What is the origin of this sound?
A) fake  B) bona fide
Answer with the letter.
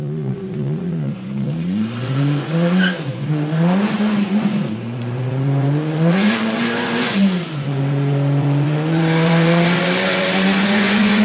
A